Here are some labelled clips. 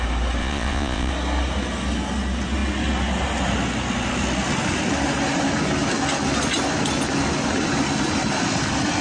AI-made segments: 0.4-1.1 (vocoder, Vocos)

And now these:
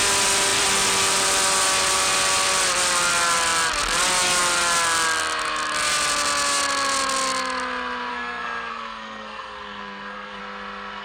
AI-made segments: 8.1-10.4 (codec, SNAC)